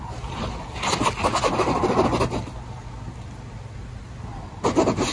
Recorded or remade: recorded